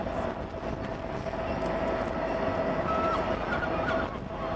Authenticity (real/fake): real